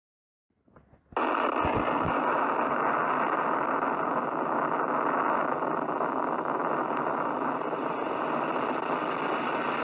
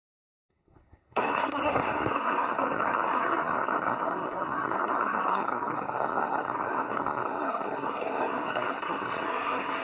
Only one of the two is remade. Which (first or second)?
second